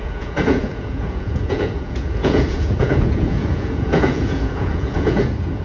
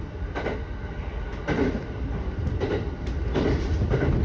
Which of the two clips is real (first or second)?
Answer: second